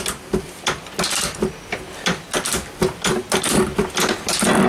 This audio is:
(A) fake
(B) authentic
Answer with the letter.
B